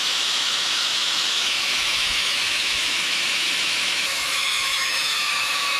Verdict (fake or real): fake